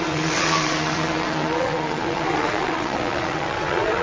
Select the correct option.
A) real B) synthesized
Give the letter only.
B